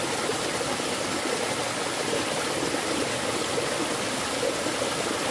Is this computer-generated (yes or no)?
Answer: no